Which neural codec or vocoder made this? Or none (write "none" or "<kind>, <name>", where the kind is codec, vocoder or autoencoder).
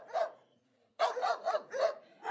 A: vocoder, Vocos